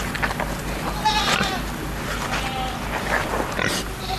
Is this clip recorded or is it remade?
recorded